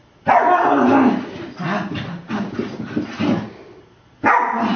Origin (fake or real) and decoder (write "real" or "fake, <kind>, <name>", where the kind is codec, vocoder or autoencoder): real